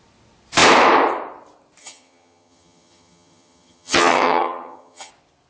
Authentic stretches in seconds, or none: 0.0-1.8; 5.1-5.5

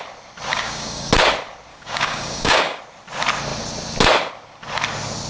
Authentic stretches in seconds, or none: 0.0-0.5; 1.1-1.7; 2.8-5.3

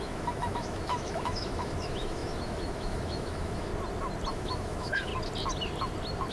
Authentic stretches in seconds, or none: 3.7-4.3; 5.1-6.3

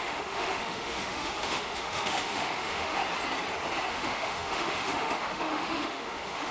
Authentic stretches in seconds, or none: 3.0-3.9

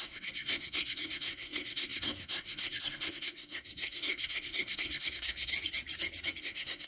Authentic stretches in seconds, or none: 5.5-6.4